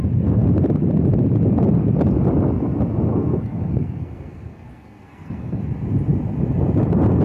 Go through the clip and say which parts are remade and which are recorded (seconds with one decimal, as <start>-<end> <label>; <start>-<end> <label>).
0.0-3.1 recorded; 3.1-5.6 remade; 5.6-7.2 recorded